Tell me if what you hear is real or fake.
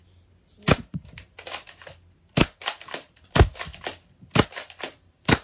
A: fake